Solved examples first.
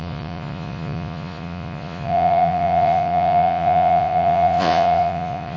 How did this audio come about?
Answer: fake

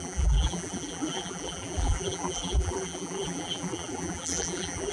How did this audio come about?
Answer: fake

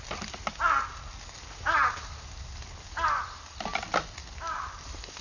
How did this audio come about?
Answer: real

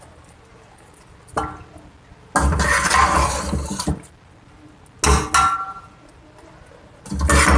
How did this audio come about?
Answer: real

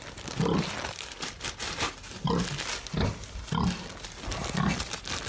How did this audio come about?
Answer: real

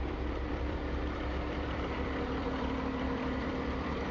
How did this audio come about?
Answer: fake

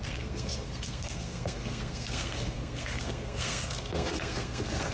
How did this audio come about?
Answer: fake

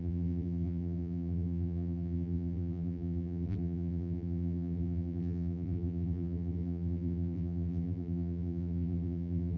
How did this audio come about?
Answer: fake